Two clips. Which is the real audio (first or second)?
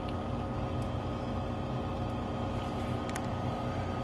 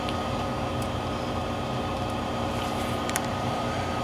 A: first